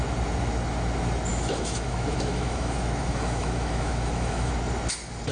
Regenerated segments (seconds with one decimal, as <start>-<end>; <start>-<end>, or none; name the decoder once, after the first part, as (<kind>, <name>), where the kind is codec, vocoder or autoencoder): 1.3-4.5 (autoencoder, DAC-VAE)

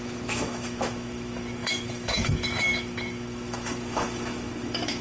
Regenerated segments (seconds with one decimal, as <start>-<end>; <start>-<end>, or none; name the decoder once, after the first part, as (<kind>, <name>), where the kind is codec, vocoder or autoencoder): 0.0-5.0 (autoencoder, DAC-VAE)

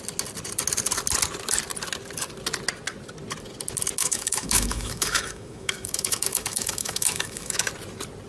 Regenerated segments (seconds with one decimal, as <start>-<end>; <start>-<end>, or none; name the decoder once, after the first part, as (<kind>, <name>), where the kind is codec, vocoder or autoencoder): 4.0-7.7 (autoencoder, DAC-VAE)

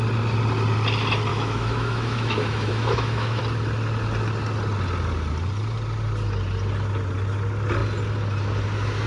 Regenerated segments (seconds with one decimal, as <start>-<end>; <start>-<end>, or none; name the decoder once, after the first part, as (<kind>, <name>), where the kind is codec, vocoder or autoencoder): 1.3-3.4 (autoencoder, DAC-VAE)

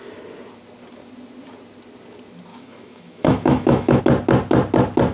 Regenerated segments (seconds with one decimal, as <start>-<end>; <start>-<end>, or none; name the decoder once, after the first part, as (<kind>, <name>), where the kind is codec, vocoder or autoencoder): 2.5-4.0 (autoencoder, DAC-VAE)